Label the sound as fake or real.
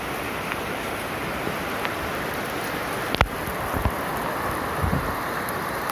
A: real